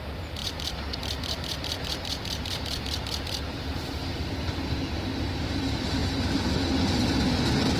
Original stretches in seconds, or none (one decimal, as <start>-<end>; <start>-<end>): 0.0-0.4; 5.0-7.8